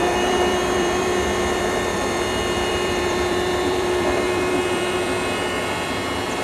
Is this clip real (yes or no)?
no